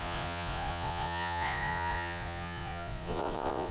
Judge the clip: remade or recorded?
remade